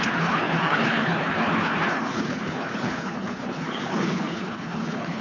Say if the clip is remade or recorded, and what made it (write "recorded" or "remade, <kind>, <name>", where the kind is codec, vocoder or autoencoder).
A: remade, codec, HILCodec